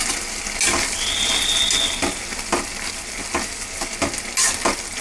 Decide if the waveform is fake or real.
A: real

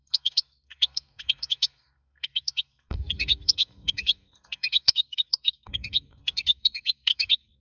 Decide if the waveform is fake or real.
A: fake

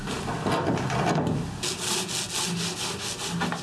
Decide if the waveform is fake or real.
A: real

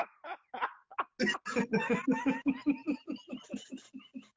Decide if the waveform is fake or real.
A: real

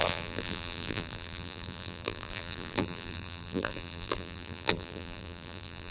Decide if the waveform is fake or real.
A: fake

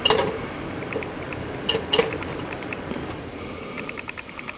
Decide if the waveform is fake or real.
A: fake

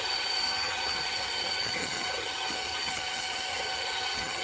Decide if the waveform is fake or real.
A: fake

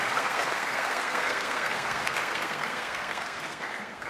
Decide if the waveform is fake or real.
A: fake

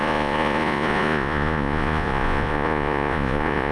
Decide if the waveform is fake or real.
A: fake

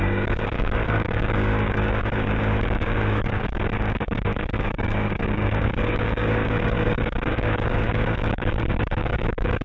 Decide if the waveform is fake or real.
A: fake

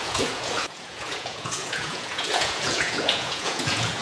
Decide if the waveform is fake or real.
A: fake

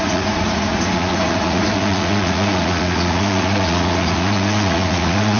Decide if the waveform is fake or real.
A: fake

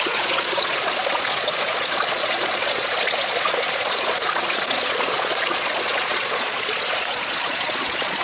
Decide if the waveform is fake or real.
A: fake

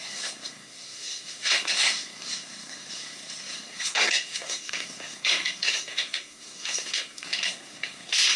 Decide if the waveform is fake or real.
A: fake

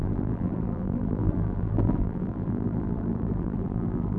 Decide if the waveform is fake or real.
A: fake